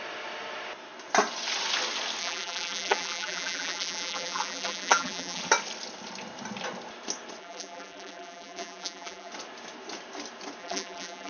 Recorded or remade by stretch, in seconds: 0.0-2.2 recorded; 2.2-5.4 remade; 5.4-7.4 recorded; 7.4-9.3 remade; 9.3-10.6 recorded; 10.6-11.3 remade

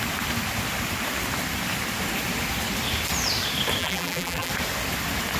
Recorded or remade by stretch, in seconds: 0.0-3.8 recorded; 3.8-4.5 remade; 4.5-5.4 recorded

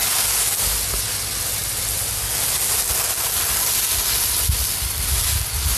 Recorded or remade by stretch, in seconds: 0.0-5.8 recorded